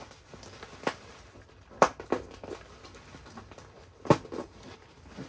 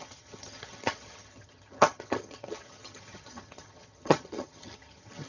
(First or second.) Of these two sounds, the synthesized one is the second